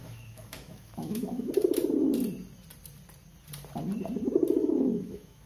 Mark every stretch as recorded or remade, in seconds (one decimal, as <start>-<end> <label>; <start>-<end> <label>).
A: 0.0-1.5 remade; 1.5-4.6 recorded; 4.6-5.5 remade

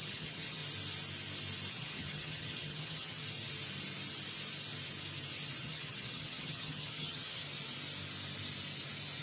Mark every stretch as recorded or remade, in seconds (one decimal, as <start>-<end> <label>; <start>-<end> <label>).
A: 0.0-0.6 remade; 0.6-1.7 recorded; 1.7-3.2 remade; 3.2-5.6 recorded; 5.6-7.4 remade; 7.4-9.2 recorded

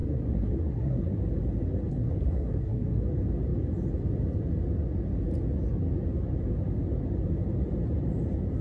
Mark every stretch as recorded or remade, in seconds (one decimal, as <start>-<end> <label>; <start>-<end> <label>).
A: 0.0-1.2 remade; 1.2-1.9 recorded; 1.9-3.0 remade; 3.0-8.6 recorded

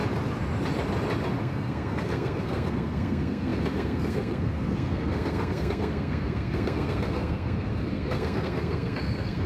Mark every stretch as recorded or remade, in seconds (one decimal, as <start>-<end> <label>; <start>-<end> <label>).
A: 0.0-1.4 recorded; 1.4-9.5 remade

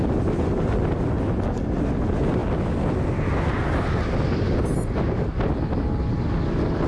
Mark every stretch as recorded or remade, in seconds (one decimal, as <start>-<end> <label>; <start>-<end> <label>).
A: 0.0-6.9 recorded